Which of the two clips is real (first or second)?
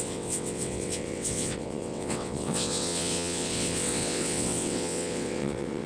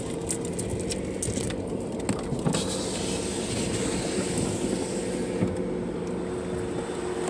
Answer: second